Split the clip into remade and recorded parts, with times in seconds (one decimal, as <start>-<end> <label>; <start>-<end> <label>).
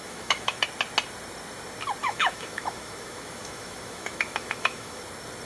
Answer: 0.0-0.6 remade; 0.6-2.0 recorded; 2.0-5.0 remade; 5.0-5.5 recorded